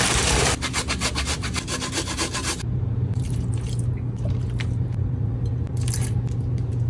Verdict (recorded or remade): remade